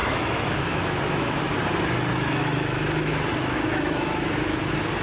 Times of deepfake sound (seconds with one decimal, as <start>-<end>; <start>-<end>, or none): 0.0-1.6; 2.1-4.6